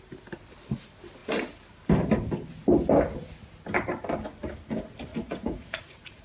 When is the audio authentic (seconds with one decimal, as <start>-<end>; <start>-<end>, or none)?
0.0-5.1